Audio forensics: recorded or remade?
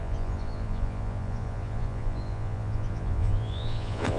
remade